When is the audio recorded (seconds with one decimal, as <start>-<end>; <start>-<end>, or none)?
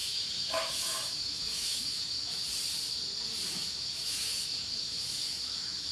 2.4-3.5